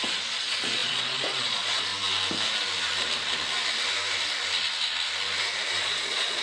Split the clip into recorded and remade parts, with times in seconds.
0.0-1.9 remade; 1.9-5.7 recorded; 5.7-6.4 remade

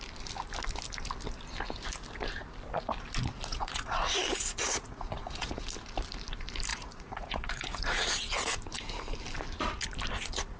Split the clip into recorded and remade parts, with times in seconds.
0.0-3.5 recorded; 3.5-4.1 remade; 4.1-4.6 recorded; 4.6-5.6 remade; 5.6-6.7 recorded; 6.7-8.1 remade; 8.1-10.6 recorded

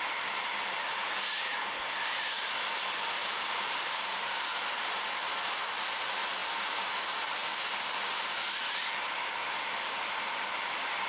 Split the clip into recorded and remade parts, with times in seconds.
0.0-3.2 recorded; 3.2-4.5 remade; 4.5-6.4 recorded; 6.4-7.0 remade; 7.0-11.1 recorded

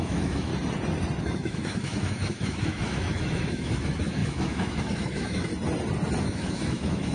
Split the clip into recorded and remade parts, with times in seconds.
0.0-0.5 remade; 0.5-1.2 recorded; 1.2-5.5 remade; 5.5-6.2 recorded; 6.2-7.1 remade

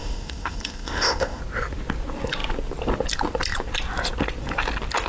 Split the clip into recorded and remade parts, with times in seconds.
0.0-1.4 remade; 1.4-5.1 recorded